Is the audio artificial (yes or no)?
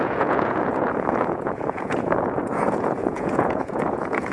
yes